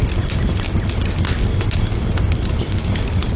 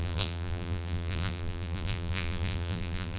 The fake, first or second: second